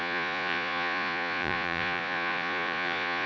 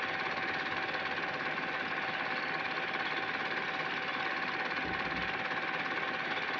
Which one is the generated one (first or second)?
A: first